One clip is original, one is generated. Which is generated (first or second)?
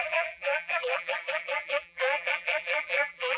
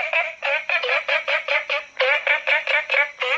first